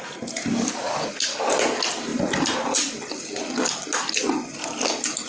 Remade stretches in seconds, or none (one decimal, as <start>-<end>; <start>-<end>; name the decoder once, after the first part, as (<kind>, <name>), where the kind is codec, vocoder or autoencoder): 0.5-1.1 (codec, DAC)